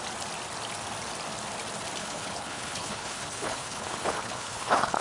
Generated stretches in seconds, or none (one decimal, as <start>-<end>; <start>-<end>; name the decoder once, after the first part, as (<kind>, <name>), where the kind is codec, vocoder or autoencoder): 2.0-5.0 (codec, HILCodec)